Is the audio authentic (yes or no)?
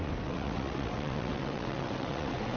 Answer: no